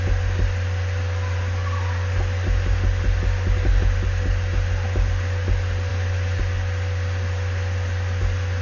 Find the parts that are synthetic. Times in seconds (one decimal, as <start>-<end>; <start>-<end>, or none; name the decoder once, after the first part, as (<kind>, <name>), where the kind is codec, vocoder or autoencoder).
none

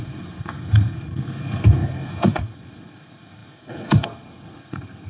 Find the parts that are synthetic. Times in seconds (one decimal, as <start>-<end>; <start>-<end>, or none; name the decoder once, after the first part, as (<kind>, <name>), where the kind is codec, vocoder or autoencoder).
0.0-5.1 (codec, SNAC)